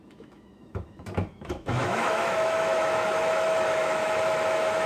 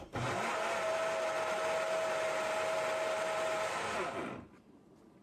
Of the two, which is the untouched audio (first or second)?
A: second